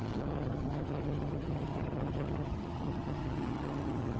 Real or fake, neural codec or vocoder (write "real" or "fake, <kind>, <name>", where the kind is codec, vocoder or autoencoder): fake, vocoder, HiFi-GAN